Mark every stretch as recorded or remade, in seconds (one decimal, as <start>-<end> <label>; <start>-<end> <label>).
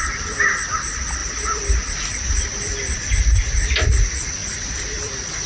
0.0-5.5 recorded